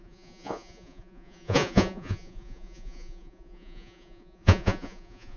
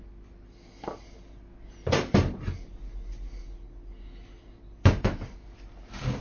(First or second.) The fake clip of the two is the first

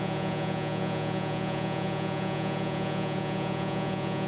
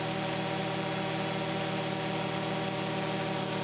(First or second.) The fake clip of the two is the first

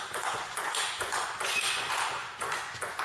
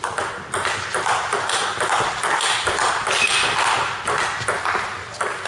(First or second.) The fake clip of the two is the first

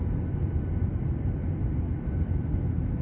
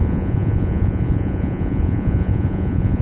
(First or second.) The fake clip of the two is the second